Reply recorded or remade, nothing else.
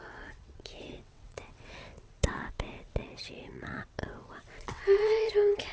remade